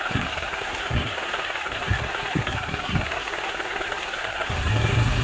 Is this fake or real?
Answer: fake